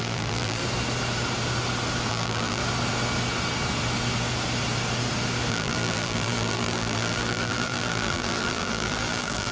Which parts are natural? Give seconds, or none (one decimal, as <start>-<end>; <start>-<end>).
0.6-2.1; 2.6-5.5